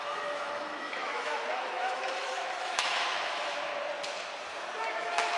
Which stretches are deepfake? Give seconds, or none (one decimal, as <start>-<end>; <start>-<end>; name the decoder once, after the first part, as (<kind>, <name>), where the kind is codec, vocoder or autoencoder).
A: 0.0-3.7 (autoencoder, DAC-VAE); 4.9-5.4

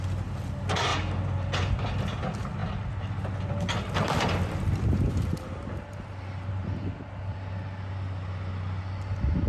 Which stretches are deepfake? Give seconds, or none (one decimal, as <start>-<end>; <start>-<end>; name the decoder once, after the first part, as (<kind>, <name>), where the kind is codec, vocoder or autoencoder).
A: none

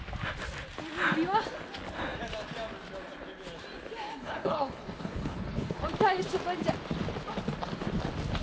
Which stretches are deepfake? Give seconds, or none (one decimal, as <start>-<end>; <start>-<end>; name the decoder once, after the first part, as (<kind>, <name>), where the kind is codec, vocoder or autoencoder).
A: 4.1-5.8 (codec, HILCodec)